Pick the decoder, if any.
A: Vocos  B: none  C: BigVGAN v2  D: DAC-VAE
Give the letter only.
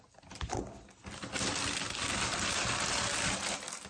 B